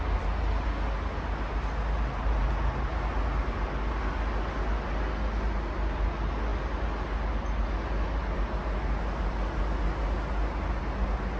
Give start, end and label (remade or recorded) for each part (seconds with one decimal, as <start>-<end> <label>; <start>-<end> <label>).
0.0-11.4 recorded